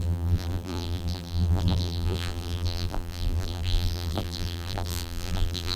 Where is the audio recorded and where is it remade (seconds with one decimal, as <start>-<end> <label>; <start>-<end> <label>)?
0.0-5.8 remade